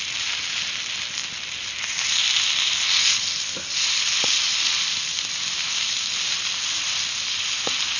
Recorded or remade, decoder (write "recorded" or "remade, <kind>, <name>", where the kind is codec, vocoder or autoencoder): recorded